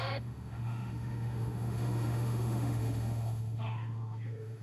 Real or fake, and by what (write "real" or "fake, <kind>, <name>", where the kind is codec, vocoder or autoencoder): fake, autoencoder, DAC-VAE